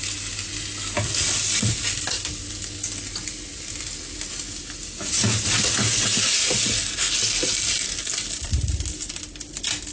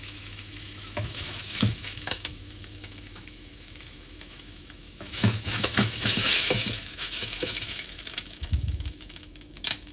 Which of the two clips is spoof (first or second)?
second